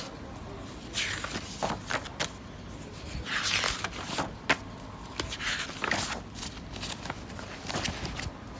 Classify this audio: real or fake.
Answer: real